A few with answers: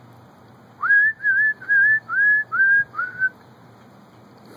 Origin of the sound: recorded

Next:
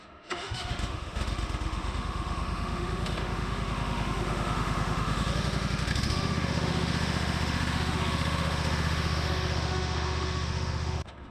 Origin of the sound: remade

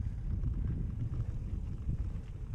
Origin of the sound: recorded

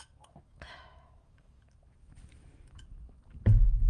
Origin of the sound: remade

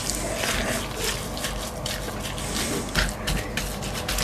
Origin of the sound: recorded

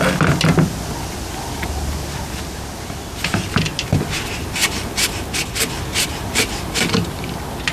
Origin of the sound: recorded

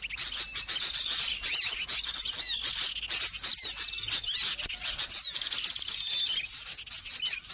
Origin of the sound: recorded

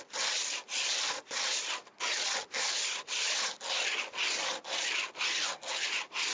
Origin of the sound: recorded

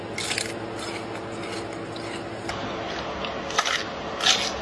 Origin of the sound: recorded